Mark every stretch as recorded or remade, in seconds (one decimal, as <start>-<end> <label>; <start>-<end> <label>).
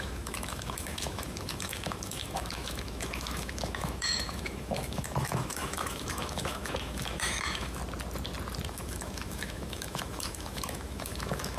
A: 0.0-7.8 remade; 7.8-8.7 recorded; 8.7-11.6 remade